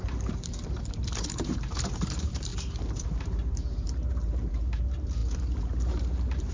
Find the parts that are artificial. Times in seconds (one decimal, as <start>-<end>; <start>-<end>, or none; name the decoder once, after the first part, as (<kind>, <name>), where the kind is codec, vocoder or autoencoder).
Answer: 0.0-6.5 (vocoder, BigVGAN v2)

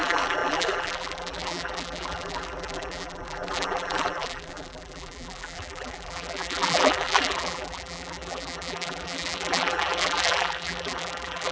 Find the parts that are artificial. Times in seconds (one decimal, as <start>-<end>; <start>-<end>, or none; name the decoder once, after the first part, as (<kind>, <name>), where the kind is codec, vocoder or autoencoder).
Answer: 0.0-11.5 (vocoder, BigVGAN v2)

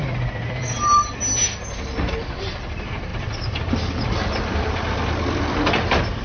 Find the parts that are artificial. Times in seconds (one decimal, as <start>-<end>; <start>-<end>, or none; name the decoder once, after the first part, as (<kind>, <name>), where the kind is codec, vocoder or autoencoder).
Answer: 0.0-6.2 (vocoder, BigVGAN v2)

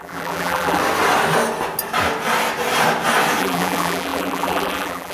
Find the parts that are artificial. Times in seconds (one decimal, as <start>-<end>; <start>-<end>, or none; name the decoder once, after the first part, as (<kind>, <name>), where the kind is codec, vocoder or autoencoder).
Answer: 0.0-0.8 (vocoder, BigVGAN v2); 3.4-5.1